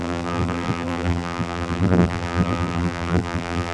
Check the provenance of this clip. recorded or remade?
remade